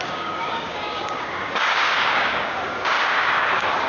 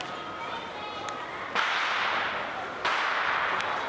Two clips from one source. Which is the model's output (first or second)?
first